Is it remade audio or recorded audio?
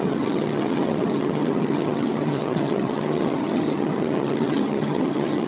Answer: remade